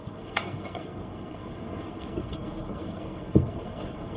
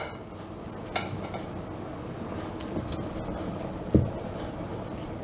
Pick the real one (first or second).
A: second